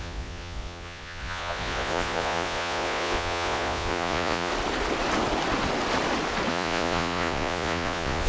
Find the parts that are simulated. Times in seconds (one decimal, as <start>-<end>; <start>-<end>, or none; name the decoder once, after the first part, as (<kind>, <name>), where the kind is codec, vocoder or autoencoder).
0.0-4.5 (vocoder, Vocos); 6.5-8.3